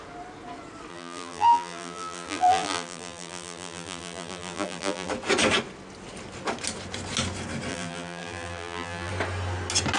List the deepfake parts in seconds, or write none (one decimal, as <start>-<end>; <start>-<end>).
0.9-5.1; 7.7-9.1